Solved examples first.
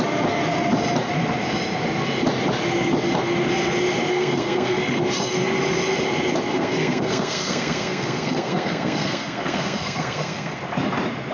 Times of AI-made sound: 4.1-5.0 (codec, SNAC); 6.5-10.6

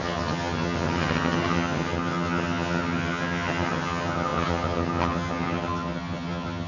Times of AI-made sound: 0.0-6.7 (vocoder, HiFi-GAN)